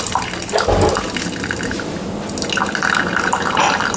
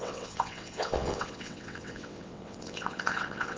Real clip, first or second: first